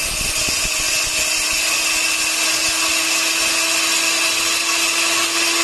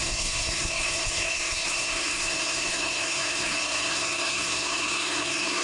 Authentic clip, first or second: first